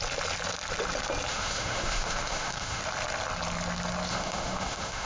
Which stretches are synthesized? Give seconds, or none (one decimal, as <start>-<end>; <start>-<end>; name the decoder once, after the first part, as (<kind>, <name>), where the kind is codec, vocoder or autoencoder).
1.3-2.8 (autoencoder, DAC-VAE); 4.1-5.1